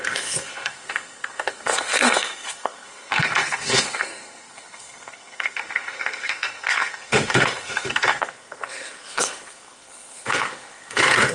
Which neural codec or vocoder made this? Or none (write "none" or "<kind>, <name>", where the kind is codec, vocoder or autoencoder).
codec, SNAC